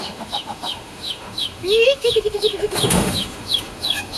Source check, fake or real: fake